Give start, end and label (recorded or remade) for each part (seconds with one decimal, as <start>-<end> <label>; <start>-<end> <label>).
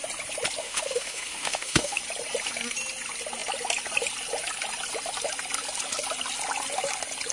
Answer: 0.0-0.6 recorded; 0.6-2.0 remade; 2.0-7.3 recorded